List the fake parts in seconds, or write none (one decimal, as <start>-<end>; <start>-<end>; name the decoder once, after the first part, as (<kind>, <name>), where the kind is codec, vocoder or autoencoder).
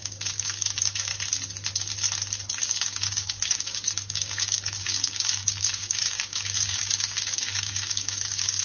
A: 0.0-1.1 (codec, DAC); 2.6-8.6